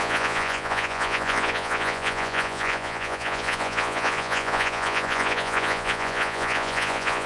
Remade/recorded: remade